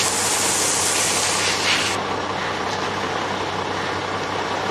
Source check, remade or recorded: recorded